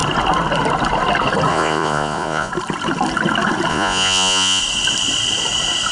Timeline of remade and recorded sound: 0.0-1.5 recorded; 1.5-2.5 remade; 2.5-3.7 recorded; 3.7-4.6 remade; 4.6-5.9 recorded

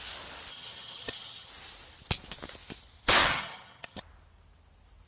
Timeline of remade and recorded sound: 0.0-0.5 recorded; 0.5-1.5 remade; 1.5-3.2 recorded; 3.2-4.0 remade; 4.0-5.1 recorded

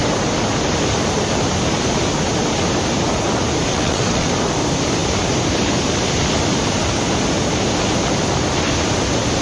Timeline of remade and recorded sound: 0.0-3.7 recorded; 3.7-4.3 remade; 4.3-9.4 recorded

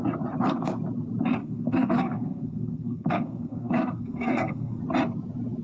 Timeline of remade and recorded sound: 0.0-1.4 recorded; 1.4-4.8 remade; 4.8-5.6 recorded

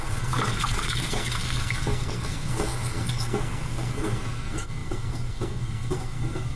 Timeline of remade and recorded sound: 0.0-6.6 remade

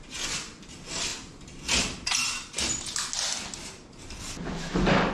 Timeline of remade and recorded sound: 0.0-5.1 recorded

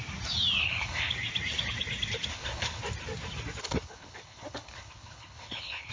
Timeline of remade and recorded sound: 0.0-0.6 recorded; 0.6-1.1 remade; 1.1-2.3 recorded; 2.3-2.8 remade; 2.8-3.6 recorded; 3.6-5.9 remade

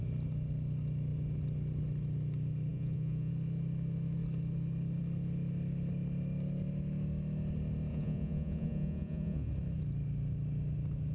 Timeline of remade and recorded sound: 0.0-2.7 recorded; 2.7-3.3 remade; 3.3-7.9 recorded; 7.9-9.5 remade; 9.5-11.1 recorded